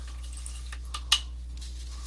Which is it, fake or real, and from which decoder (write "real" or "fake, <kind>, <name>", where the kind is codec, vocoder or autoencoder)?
real